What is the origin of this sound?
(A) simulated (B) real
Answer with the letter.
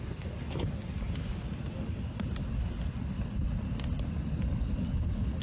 B